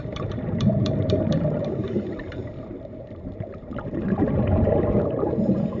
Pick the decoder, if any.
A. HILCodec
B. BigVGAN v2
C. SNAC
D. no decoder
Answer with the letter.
B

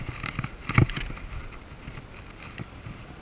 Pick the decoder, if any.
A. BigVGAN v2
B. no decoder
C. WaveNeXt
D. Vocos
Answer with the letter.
B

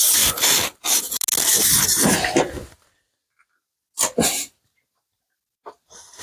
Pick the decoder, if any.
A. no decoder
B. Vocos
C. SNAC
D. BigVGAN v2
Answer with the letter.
A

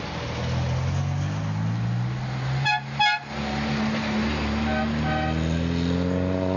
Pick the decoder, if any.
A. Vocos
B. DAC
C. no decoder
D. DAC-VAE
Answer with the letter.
C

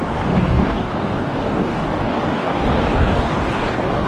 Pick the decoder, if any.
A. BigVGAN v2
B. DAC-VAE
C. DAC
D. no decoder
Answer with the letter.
C